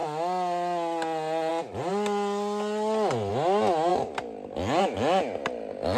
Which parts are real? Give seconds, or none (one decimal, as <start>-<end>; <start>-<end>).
0.0-6.0